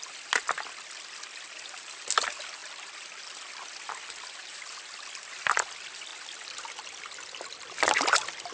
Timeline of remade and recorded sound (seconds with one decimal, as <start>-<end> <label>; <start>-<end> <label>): 0.0-8.5 recorded